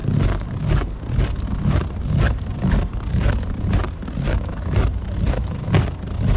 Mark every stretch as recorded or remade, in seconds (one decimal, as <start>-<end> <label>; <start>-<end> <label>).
0.0-6.4 recorded